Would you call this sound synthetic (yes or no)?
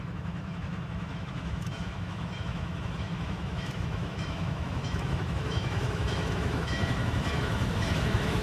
yes